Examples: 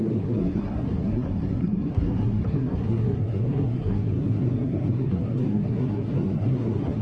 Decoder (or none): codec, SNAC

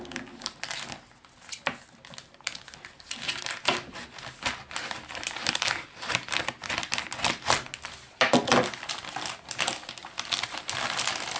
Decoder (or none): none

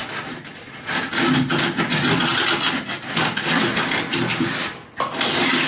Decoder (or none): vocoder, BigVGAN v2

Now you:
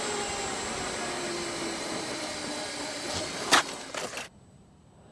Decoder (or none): none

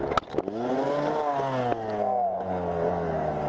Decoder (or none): none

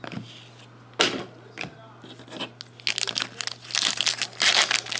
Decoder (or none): none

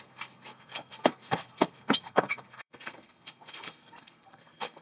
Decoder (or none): codec, SNAC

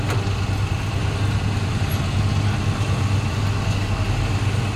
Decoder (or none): none